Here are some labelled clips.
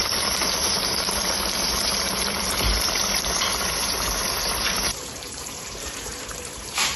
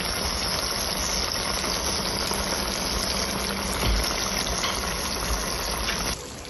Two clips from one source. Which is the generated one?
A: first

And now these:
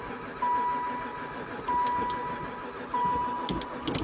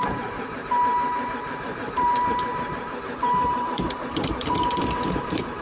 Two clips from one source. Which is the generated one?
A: second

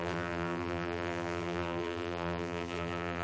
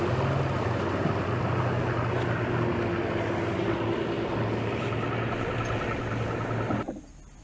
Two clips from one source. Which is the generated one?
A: first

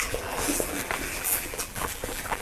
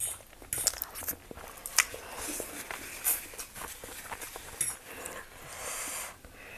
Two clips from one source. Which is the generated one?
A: first